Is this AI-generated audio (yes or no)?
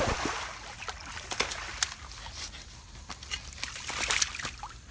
no